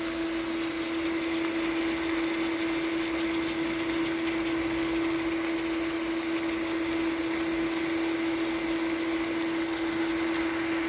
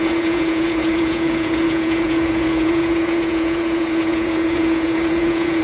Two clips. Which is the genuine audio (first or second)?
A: first